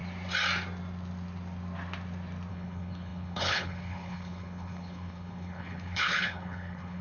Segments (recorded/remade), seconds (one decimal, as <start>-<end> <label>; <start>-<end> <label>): 0.0-2.5 recorded; 2.5-7.0 remade